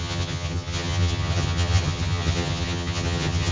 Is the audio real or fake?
fake